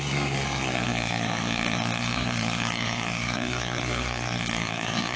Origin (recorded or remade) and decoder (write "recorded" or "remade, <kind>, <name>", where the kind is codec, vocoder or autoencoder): remade, codec, SNAC